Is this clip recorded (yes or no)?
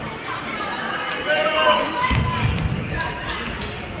no